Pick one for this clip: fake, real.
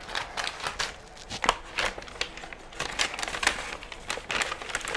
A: real